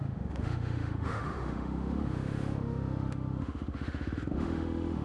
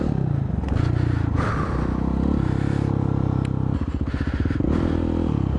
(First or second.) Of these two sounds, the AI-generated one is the first